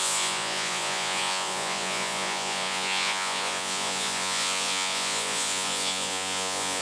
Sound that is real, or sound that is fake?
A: fake